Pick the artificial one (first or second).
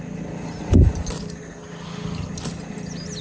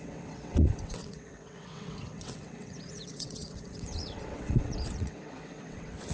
second